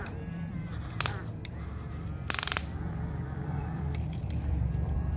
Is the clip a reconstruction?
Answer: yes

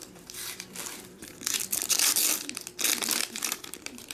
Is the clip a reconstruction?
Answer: yes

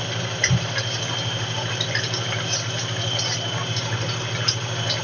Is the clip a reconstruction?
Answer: no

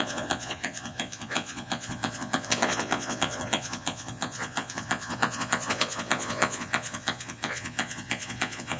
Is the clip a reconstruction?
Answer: yes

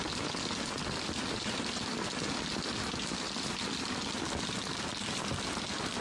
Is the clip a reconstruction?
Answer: no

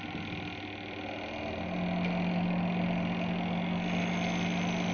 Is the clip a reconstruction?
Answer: no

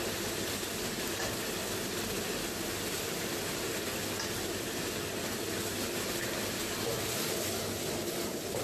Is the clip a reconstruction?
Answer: no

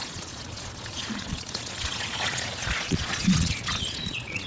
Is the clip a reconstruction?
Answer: yes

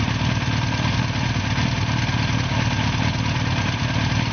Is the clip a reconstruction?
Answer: no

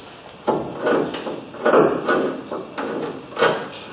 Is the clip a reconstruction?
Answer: no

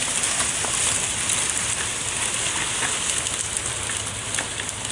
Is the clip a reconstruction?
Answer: no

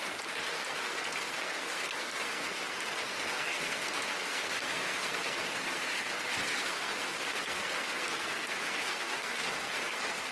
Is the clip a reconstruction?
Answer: yes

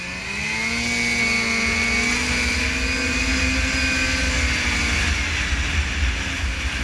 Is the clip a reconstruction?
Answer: no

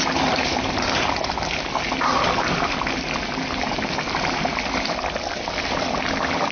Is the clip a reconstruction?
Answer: no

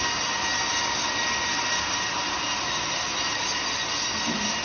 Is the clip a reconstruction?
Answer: no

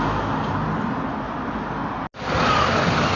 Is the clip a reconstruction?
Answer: no